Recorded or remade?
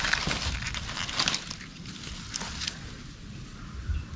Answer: recorded